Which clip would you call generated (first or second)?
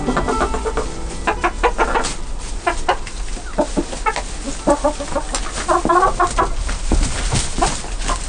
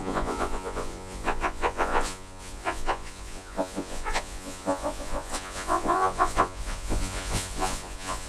second